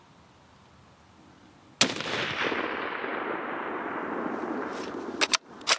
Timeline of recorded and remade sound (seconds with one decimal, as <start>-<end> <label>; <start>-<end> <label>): 0.0-5.8 recorded